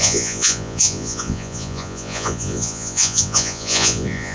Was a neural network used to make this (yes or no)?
yes